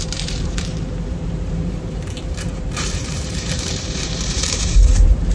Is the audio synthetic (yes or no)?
yes